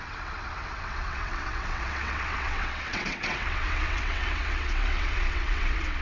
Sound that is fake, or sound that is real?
fake